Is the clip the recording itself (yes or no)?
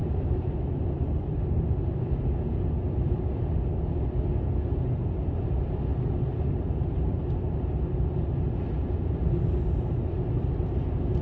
yes